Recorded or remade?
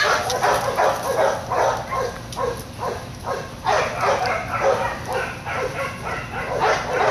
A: recorded